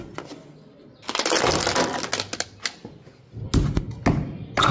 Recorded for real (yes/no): yes